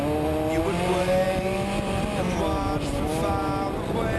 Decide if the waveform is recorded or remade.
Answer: recorded